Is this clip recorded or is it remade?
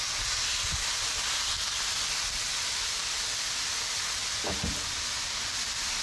recorded